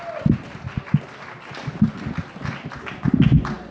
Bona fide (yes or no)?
yes